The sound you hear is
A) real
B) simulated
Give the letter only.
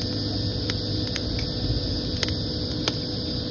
A